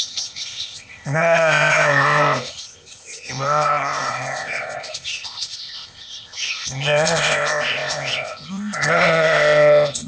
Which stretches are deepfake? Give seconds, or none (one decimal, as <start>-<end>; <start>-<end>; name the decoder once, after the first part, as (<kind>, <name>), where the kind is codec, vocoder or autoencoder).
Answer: 0.0-10.1 (codec, ZipCodec)